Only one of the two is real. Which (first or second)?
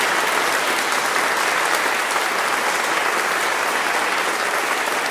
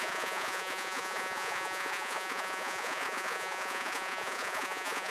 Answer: first